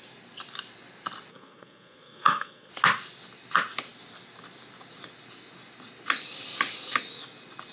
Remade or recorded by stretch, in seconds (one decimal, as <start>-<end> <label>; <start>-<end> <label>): 0.0-1.3 recorded; 1.3-2.7 remade; 2.7-7.7 recorded